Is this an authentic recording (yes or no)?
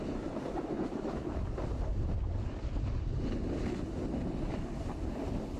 yes